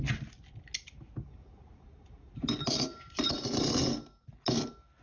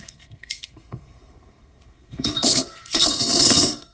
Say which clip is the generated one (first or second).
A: second